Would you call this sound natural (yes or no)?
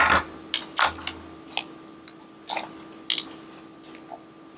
yes